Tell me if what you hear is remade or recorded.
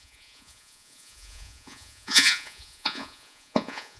remade